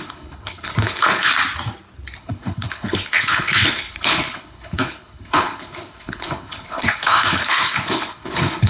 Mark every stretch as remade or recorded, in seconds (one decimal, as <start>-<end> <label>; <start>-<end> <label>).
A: 0.0-1.3 remade; 1.3-2.2 recorded; 2.2-8.7 remade

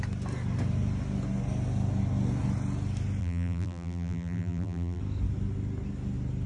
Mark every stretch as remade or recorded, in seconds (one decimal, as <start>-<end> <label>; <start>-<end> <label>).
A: 0.0-3.2 recorded; 3.2-5.0 remade; 5.0-6.5 recorded

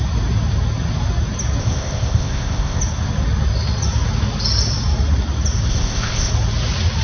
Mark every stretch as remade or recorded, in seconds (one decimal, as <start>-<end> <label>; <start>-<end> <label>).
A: 0.0-1.6 recorded; 1.6-2.8 remade; 2.8-5.7 recorded; 5.7-6.3 remade; 6.3-7.0 recorded

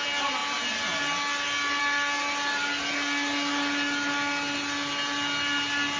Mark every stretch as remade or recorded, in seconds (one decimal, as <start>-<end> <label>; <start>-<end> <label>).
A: 0.0-6.0 recorded

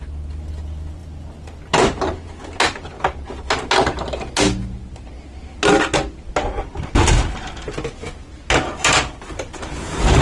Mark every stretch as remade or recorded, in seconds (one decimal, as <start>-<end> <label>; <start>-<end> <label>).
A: 0.0-10.2 recorded